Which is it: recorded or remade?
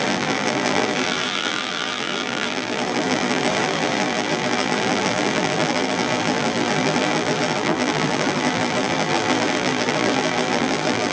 remade